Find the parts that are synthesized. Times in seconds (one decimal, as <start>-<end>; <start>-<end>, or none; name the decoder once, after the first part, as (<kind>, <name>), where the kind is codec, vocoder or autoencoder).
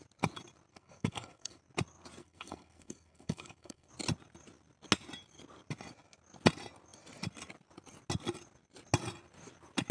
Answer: 0.7-1.6 (codec, SNAC); 2.2-3.9